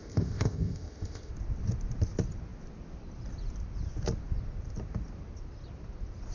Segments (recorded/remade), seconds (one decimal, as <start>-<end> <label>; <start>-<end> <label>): 0.0-1.3 remade; 1.3-6.3 recorded